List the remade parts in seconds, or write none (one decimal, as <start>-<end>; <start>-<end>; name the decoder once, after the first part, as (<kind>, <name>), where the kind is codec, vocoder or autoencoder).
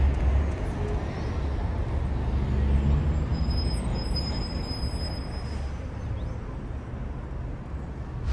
none